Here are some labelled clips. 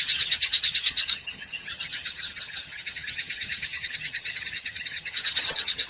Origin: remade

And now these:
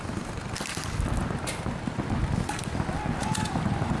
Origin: recorded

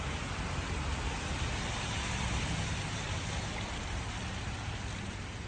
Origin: recorded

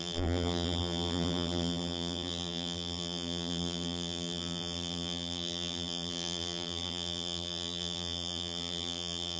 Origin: remade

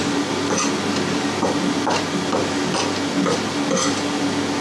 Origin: recorded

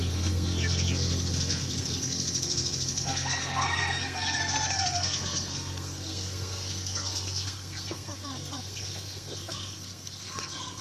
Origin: remade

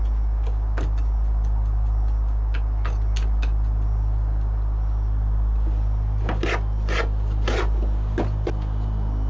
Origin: recorded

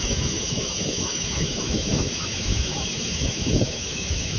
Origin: remade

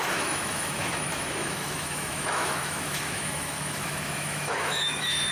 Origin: remade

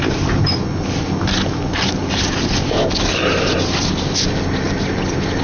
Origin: recorded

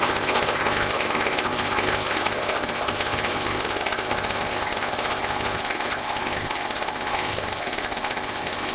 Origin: remade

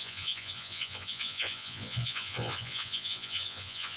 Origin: remade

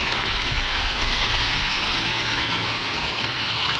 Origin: remade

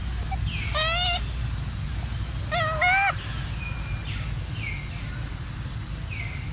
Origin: recorded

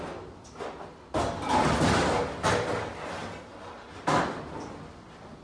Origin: recorded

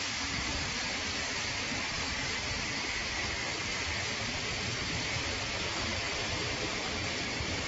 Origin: remade